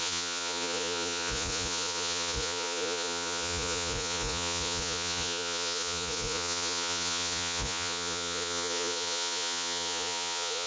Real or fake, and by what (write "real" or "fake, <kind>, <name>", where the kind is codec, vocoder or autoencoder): fake, vocoder, Vocos